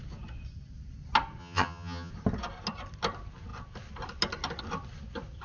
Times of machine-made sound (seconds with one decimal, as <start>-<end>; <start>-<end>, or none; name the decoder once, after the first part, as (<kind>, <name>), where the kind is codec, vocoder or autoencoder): 1.4-2.1 (vocoder, HiFi-GAN)